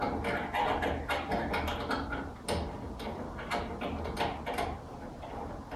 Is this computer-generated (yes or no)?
no